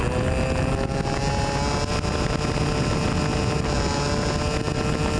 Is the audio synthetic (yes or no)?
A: no